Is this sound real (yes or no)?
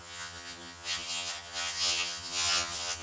no